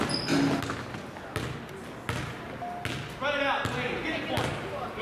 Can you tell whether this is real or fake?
real